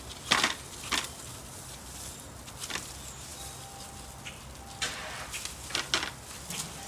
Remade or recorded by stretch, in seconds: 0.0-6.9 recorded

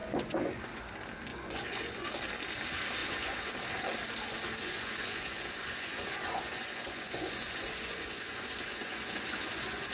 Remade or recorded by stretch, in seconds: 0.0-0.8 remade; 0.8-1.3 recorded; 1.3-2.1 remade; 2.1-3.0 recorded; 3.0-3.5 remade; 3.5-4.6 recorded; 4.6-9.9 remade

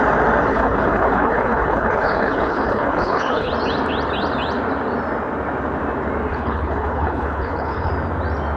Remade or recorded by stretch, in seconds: 0.0-0.5 recorded; 0.5-3.5 remade; 3.5-6.3 recorded; 6.3-7.9 remade; 7.9-8.6 recorded

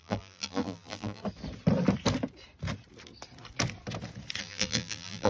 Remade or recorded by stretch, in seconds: 0.0-1.2 remade; 1.2-4.4 recorded; 4.4-5.3 remade